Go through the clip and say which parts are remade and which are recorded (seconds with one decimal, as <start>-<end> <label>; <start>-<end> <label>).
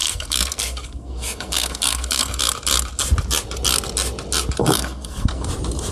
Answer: 0.0-2.4 remade; 2.4-4.6 recorded; 4.6-5.5 remade; 5.5-5.9 recorded